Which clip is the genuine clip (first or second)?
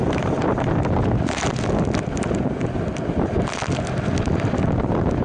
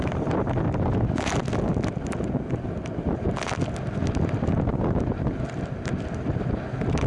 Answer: second